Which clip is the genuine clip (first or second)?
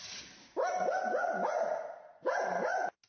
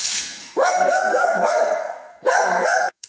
first